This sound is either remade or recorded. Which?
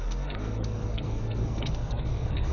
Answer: remade